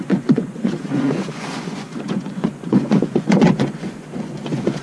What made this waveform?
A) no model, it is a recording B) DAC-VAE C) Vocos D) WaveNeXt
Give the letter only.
C